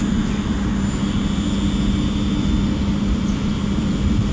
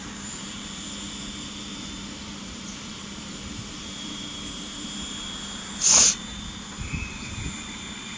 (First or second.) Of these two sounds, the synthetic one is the second